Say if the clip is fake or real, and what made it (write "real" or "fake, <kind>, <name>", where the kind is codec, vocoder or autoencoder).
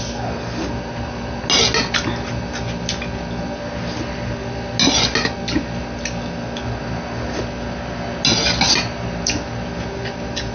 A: real